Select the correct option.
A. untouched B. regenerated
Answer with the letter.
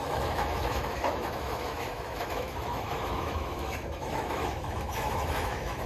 B